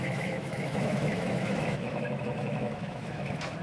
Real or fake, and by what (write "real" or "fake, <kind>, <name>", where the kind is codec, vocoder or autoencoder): fake, autoencoder, DAC-VAE